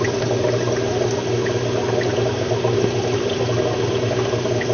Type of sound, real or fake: real